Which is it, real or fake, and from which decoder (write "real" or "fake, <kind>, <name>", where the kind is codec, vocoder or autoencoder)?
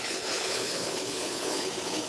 fake, codec, HILCodec